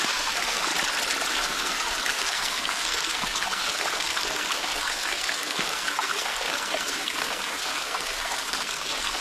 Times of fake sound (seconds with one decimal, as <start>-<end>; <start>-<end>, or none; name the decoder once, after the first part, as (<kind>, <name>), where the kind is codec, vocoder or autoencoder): 0.0-0.7 (codec, SNAC); 1.3-9.2